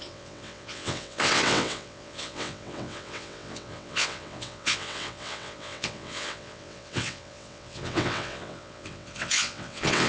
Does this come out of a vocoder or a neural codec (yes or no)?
yes